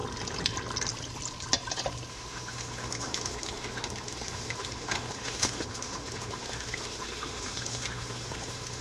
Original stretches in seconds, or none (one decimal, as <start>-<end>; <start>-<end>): 0.0-2.1